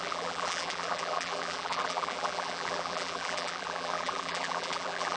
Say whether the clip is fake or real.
fake